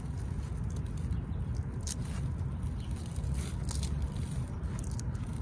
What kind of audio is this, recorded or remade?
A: recorded